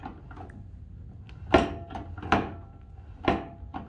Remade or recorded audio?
recorded